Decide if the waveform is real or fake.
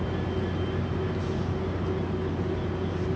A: real